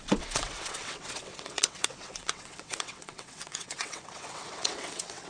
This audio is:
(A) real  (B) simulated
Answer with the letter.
B